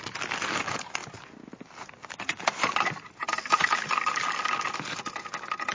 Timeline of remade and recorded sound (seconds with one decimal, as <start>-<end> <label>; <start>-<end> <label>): 0.0-5.7 recorded